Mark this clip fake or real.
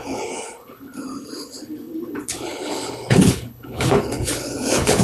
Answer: fake